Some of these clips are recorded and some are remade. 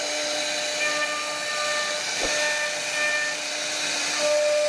recorded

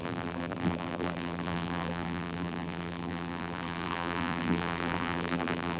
remade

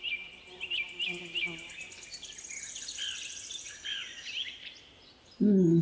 recorded